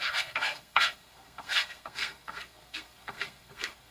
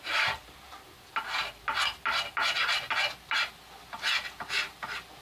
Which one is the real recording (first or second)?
second